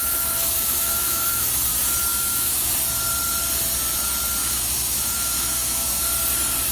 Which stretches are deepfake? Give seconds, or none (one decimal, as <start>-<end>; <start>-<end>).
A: 0.0-1.5; 2.1-2.7; 4.4-6.0